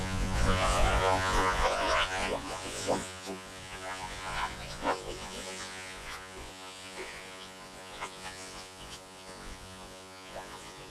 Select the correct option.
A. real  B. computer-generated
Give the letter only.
B